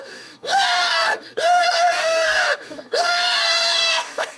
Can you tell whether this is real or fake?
fake